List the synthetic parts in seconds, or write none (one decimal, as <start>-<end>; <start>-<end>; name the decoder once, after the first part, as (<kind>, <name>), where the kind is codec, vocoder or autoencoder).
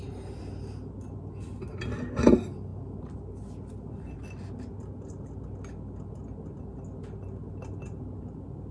none